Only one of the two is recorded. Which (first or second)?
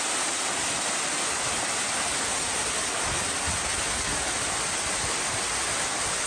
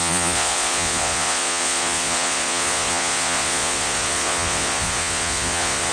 first